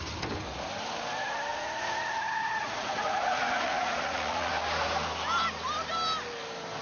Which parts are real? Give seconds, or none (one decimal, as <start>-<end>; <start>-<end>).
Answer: 0.0-1.5; 4.5-6.8